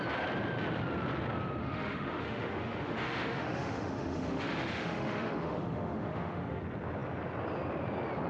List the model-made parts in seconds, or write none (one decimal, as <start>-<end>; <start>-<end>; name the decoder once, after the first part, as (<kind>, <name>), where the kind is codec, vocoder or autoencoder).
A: 1.6-6.6 (autoencoder, DAC-VAE)